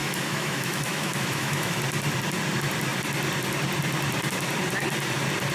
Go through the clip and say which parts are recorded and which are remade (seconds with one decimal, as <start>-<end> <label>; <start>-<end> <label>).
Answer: 0.0-1.8 remade; 1.8-5.5 recorded